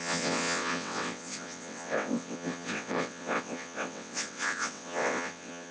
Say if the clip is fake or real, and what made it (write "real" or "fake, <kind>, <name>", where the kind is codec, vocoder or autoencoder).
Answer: fake, vocoder, WaveNeXt